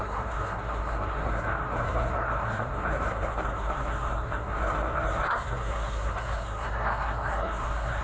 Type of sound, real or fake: fake